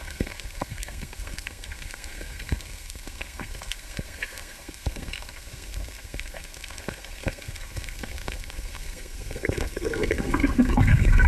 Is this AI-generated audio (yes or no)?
yes